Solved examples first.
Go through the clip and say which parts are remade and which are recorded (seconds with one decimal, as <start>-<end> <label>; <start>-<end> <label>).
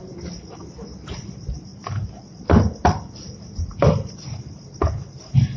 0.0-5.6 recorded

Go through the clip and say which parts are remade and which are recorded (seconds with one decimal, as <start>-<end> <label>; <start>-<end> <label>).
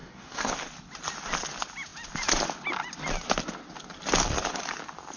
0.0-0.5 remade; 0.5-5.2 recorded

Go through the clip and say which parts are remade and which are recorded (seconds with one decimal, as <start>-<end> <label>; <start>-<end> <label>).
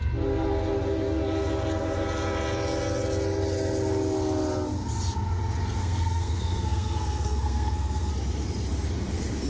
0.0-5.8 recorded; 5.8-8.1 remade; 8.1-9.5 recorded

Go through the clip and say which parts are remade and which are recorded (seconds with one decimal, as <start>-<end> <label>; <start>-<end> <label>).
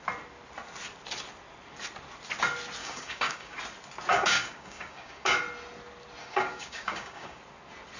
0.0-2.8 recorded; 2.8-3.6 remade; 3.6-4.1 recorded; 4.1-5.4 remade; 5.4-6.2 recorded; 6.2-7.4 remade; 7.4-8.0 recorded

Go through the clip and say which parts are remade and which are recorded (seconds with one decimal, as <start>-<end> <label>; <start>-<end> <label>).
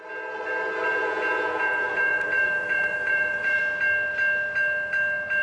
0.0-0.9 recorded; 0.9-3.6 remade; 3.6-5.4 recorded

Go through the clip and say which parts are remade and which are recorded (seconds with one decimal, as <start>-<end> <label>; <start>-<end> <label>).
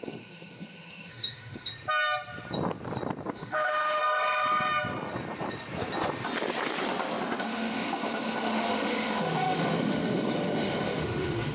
0.0-1.7 remade; 1.7-3.3 recorded; 3.3-4.0 remade; 4.0-7.4 recorded; 7.4-11.5 remade